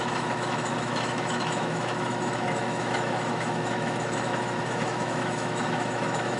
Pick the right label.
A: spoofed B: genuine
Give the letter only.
A